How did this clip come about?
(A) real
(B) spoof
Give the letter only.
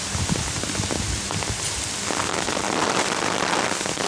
A